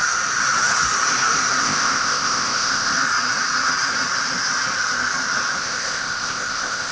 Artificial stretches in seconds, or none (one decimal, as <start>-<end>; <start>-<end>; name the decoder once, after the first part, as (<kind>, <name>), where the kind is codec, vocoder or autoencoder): 1.6-2.9 (codec, ZipCodec); 5.6-6.9